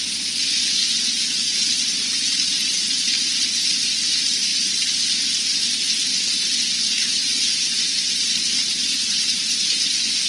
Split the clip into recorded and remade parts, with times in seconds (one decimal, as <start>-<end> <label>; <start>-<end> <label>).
0.0-0.8 recorded; 0.8-3.2 remade; 3.2-4.5 recorded; 4.5-5.0 remade; 5.0-7.0 recorded; 7.0-10.3 remade